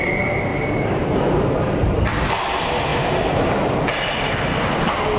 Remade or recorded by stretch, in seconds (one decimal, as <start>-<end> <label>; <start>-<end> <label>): 0.0-0.5 recorded; 0.5-1.2 remade; 1.2-2.9 recorded; 2.9-3.6 remade; 3.6-5.2 recorded